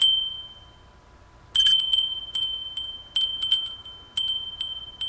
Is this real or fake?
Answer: real